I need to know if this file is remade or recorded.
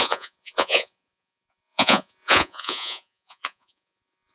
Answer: remade